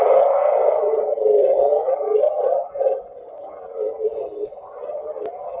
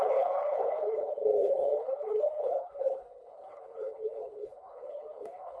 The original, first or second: first